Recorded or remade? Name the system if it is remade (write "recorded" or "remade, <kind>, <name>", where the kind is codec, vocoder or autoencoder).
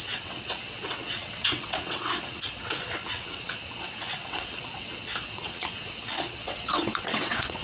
remade, vocoder, WaveNeXt